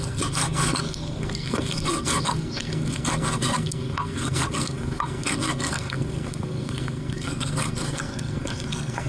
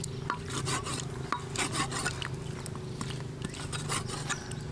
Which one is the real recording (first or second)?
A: second